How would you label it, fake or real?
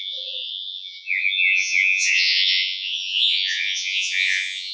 fake